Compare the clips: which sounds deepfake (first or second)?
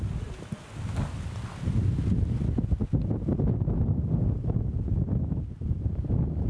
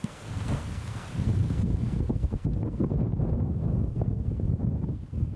second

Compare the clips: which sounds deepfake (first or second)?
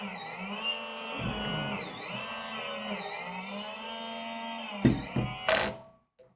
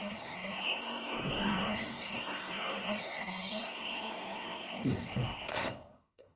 second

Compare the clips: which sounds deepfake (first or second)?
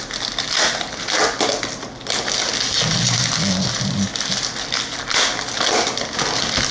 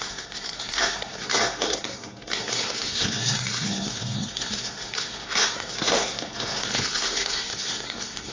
second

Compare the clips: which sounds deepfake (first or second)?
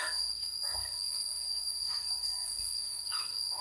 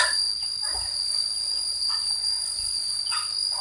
first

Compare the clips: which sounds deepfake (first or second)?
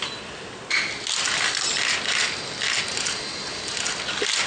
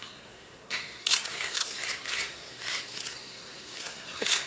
second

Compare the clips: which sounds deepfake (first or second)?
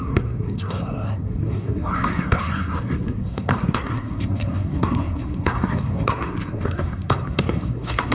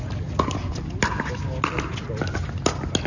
first